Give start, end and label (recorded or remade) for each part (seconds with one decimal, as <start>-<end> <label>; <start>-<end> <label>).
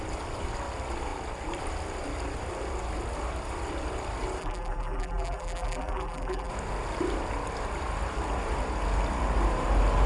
0.0-4.4 recorded; 4.4-6.5 remade; 6.5-10.1 recorded